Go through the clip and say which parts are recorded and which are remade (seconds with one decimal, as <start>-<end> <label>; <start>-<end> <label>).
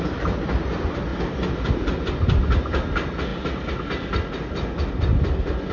0.0-5.7 recorded